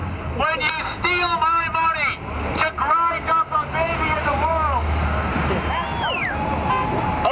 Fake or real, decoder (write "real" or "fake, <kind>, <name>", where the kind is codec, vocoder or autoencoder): real